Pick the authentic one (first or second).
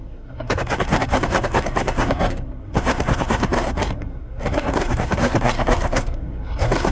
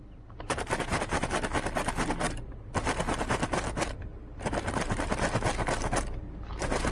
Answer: second